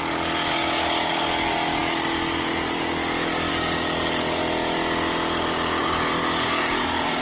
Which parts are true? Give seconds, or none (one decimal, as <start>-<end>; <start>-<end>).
4.4-5.8